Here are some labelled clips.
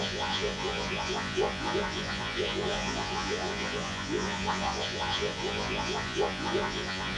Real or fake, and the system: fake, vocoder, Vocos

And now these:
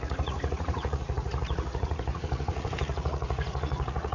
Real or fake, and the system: fake, vocoder, Vocos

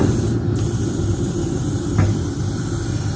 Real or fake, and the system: real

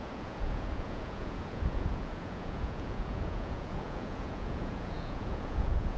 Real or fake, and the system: fake, vocoder, Vocos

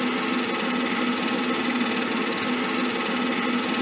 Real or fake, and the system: real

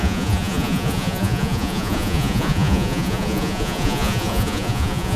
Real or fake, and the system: fake, vocoder, Vocos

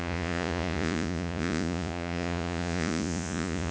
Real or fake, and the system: fake, vocoder, Vocos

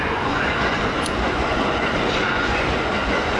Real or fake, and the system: fake, vocoder, Vocos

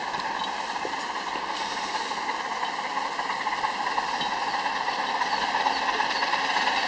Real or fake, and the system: real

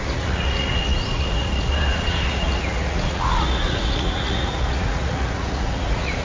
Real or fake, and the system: fake, vocoder, Vocos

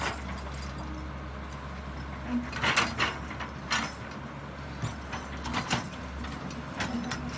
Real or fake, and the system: real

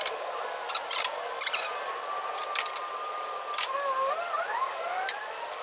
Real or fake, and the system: real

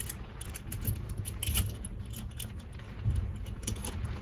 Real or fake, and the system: fake, vocoder, Vocos